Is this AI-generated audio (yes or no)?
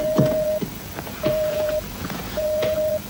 yes